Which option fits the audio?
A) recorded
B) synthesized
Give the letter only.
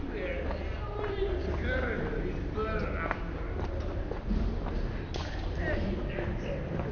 A